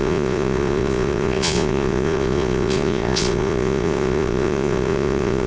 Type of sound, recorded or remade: remade